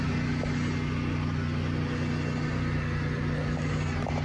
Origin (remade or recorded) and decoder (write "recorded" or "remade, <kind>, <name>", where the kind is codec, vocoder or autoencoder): recorded